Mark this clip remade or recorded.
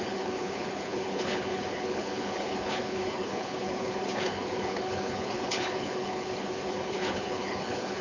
remade